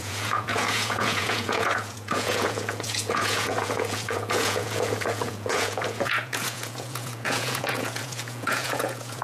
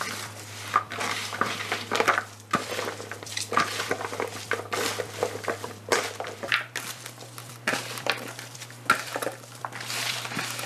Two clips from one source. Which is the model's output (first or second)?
first